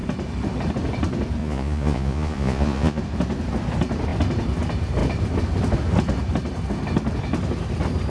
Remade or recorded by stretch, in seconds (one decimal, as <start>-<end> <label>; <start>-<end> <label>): 0.0-1.4 recorded; 1.4-3.0 remade; 3.0-8.1 recorded